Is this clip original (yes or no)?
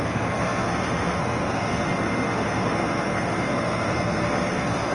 no